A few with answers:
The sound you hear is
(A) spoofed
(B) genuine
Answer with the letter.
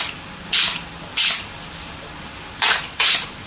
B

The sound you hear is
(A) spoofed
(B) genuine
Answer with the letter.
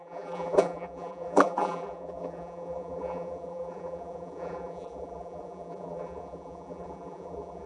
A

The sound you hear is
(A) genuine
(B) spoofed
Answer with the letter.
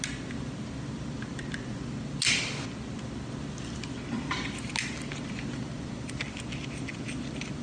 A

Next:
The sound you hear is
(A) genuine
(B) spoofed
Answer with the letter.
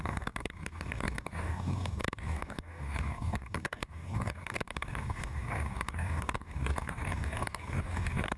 B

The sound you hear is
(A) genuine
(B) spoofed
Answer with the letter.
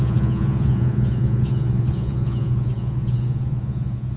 B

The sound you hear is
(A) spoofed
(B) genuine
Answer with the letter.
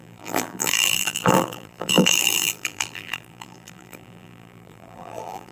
A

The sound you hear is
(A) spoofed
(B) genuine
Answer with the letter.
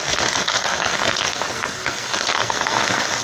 A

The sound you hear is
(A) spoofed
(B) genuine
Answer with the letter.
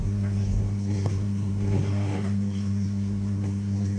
A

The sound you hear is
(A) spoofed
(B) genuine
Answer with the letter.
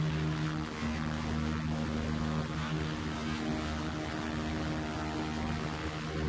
B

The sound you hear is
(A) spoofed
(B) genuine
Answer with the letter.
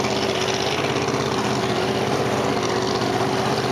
B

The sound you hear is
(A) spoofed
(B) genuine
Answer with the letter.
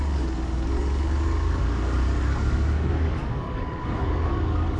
A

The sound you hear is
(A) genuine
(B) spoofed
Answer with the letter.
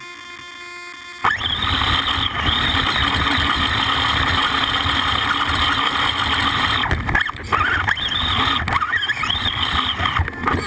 A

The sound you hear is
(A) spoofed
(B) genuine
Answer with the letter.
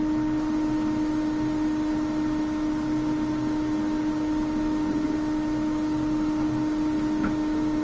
B